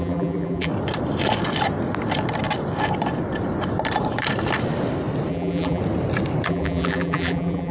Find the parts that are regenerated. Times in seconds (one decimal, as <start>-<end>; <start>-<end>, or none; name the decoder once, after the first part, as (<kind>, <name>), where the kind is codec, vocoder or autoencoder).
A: 0.0-0.7 (vocoder, BigVGAN v2); 5.3-5.8; 6.5-7.7